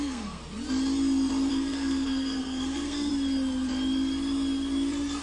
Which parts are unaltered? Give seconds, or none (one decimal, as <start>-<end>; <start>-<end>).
0.4-1.5; 3.1-5.2